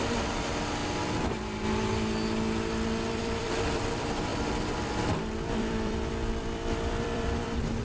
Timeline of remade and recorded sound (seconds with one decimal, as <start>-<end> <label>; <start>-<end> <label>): 0.0-0.8 remade; 0.8-3.1 recorded; 3.1-7.8 remade